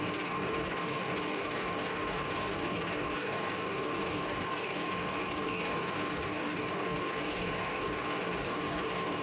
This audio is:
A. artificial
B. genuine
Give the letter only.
A